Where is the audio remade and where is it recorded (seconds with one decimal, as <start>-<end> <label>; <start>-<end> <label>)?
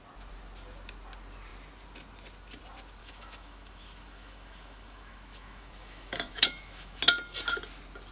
0.0-3.0 recorded; 3.0-7.0 remade; 7.0-8.1 recorded